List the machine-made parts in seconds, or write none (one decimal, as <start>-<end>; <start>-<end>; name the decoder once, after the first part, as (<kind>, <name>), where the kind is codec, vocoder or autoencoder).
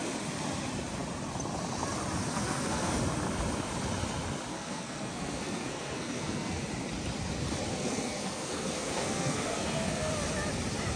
2.3-2.9 (codec, SNAC); 4.5-6.6; 7.7-10.1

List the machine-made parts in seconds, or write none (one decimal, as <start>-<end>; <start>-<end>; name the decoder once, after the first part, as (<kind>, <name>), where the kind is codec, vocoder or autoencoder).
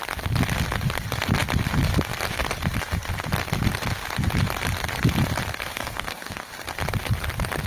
5.7-6.5 (codec, SNAC)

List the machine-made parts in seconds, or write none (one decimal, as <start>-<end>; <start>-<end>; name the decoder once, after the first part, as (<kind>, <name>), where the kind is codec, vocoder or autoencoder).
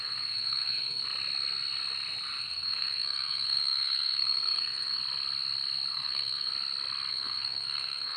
0.0-1.0 (codec, SNAC); 2.4-5.0; 5.9-6.5; 7.1-8.2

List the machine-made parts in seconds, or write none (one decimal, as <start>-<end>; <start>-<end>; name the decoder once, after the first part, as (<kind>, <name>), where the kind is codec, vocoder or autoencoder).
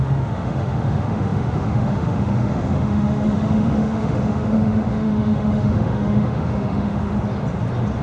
0.0-7.1 (autoencoder, DAC-VAE)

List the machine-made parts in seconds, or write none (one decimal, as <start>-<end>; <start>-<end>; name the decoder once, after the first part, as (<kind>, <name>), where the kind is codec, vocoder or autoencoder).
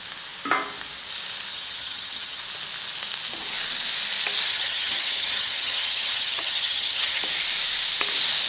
1.5-2.4 (vocoder, HiFi-GAN); 4.5-7.2